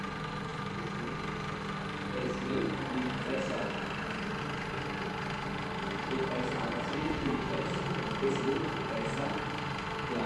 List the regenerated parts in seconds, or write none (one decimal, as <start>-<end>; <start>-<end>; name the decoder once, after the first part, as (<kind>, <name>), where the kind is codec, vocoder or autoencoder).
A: 6.9-7.5 (codec, SNAC)